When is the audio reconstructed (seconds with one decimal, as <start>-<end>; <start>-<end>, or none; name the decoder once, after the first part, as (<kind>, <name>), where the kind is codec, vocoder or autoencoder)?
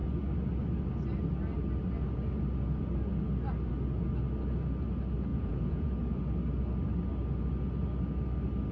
5.3-5.9 (vocoder, Vocos)